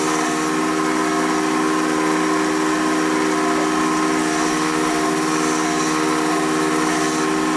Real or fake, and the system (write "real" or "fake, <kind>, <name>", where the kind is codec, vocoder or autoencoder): real